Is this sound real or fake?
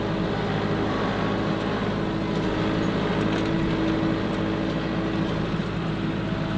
real